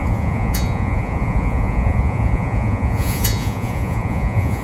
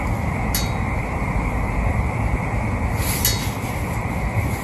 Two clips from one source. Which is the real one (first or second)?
second